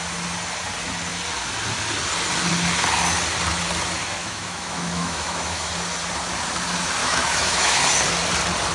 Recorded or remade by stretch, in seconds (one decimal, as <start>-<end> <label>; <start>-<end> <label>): 0.0-4.2 recorded; 4.2-5.7 remade; 5.7-7.0 recorded; 7.0-7.8 remade; 7.8-8.7 recorded